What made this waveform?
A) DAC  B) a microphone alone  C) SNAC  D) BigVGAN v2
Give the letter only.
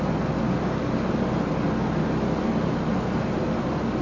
B